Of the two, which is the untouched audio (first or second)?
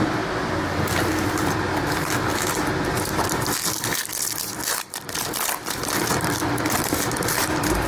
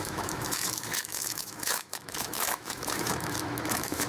first